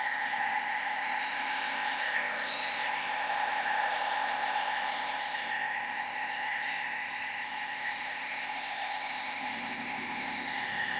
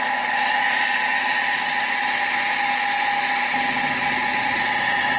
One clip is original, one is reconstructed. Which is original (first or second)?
second